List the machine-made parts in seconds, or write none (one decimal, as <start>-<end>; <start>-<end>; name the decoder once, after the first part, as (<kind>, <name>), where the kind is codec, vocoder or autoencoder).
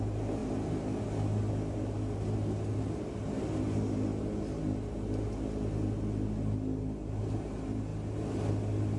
none